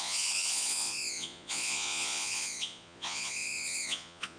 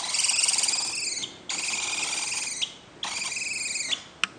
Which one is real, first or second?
second